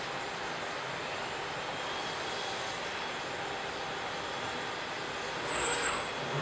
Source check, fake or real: real